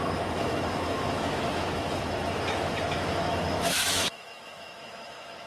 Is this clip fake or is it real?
fake